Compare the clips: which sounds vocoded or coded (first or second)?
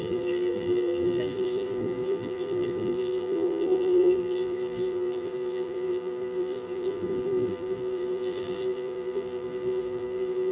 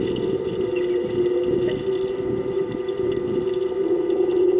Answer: first